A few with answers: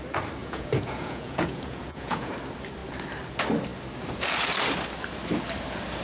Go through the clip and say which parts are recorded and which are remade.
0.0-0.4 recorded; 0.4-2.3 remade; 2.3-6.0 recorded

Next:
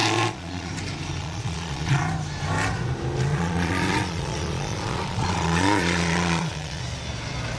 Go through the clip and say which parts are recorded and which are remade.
0.0-0.7 remade; 0.7-1.2 recorded; 1.2-2.0 remade; 2.0-3.3 recorded; 3.3-6.8 remade; 6.8-7.6 recorded